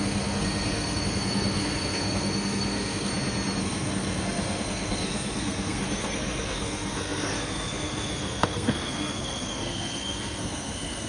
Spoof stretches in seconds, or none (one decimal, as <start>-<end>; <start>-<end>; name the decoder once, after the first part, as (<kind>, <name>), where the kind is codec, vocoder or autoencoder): 0.0-3.1 (codec, SNAC); 3.6-11.1